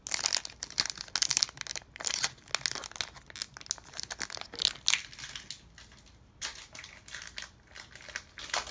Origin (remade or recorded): recorded